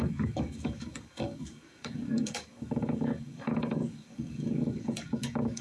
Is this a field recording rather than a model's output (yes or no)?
no